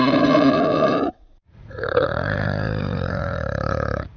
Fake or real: fake